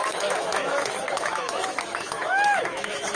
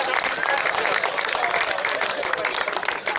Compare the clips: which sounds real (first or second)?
second